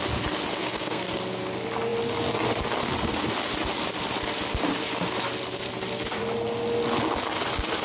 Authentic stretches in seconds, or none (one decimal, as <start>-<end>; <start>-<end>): 0.0-0.5; 1.1-7.8